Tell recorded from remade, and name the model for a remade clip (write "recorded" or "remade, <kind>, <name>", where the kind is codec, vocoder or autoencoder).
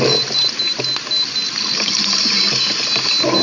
recorded